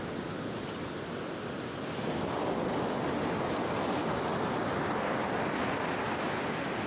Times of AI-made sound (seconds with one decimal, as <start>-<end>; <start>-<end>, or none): none